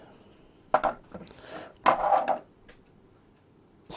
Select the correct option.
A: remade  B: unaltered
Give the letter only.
B